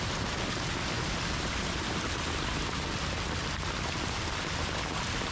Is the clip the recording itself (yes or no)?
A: yes